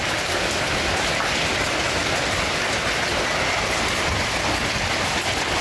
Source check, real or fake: real